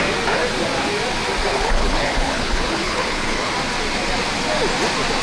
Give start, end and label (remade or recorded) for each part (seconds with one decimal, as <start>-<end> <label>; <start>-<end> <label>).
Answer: 0.0-1.5 recorded; 1.5-3.5 remade; 3.5-5.2 recorded